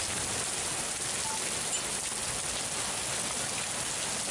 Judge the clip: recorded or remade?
recorded